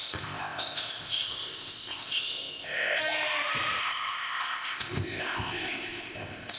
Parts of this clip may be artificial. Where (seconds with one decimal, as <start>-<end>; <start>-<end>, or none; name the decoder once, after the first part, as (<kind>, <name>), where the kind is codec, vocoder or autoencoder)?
0.0-3.0 (codec, ZipCodec); 3.8-6.6